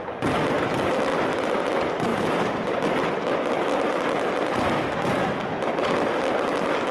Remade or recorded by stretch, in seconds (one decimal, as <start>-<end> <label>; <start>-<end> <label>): 0.0-2.1 recorded; 2.1-2.8 remade; 2.8-6.9 recorded